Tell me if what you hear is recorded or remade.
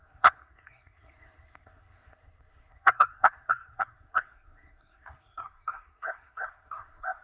remade